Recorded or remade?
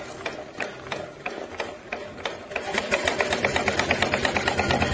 recorded